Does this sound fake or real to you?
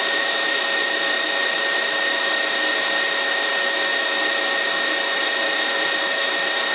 real